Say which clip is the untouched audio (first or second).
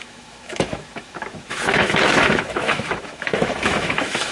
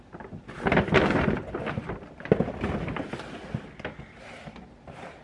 second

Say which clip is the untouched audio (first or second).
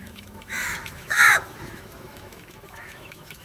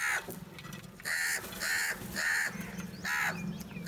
second